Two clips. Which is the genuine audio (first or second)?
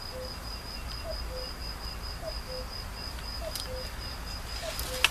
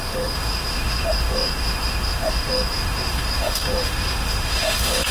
first